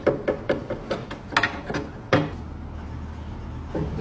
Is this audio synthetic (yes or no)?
no